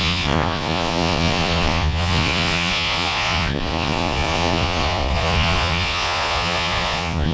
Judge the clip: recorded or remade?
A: remade